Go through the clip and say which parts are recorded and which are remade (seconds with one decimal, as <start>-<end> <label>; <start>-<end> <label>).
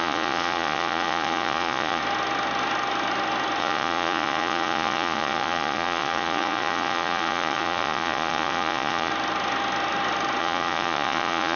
0.0-2.0 remade; 2.0-3.6 recorded; 3.6-9.1 remade; 9.1-10.4 recorded; 10.4-11.6 remade